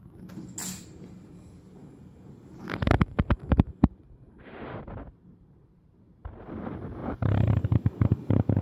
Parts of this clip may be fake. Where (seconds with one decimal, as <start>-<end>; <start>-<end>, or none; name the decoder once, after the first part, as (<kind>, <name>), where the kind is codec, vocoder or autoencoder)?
1.8-6.0 (vocoder, BigVGAN v2); 7.0-7.6